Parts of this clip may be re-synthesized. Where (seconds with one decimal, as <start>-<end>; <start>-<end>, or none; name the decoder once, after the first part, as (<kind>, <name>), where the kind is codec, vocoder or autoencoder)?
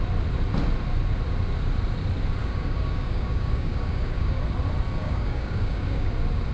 2.4-4.4 (codec, DAC); 5.0-6.1